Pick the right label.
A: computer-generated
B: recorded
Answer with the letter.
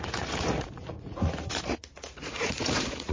A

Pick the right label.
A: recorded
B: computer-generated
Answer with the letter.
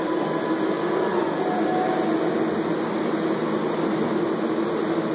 A